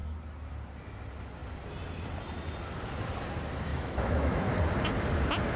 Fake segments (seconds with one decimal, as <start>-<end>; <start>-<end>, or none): 3.7-4.5